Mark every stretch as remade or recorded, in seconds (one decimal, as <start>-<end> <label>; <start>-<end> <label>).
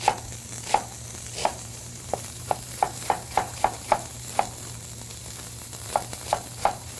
0.0-1.4 recorded; 1.4-4.3 remade; 4.3-5.2 recorded; 5.2-7.0 remade